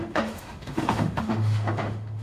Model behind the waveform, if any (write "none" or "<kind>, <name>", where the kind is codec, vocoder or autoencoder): autoencoder, DAC-VAE